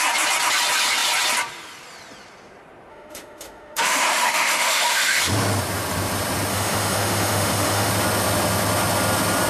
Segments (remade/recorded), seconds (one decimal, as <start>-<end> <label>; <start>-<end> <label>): 0.0-2.9 recorded; 2.9-5.2 remade; 5.2-6.5 recorded; 6.5-7.9 remade; 7.9-9.5 recorded